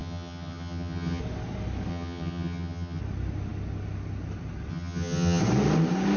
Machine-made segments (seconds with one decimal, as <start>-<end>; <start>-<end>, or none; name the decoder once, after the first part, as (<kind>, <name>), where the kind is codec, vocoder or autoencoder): 0.0-1.2 (vocoder, HiFi-GAN); 1.9-3.0; 4.7-5.4